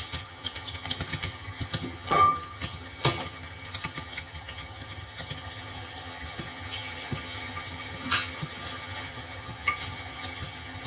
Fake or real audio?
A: fake